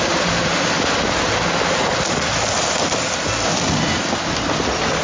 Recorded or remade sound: recorded